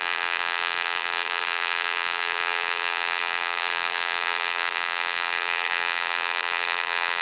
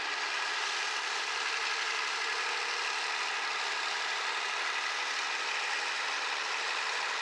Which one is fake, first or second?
first